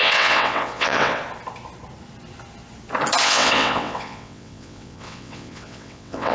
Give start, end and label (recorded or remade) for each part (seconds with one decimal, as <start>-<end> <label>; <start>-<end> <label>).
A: 0.0-1.2 remade; 1.2-3.2 recorded; 3.2-6.3 remade

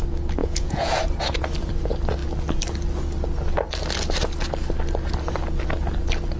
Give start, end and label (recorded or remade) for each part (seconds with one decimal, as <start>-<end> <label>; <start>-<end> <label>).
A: 0.0-0.4 recorded; 0.4-1.0 remade; 1.0-6.4 recorded